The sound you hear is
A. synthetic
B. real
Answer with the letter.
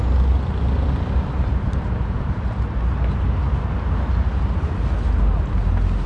B